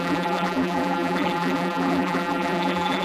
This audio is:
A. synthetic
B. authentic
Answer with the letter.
A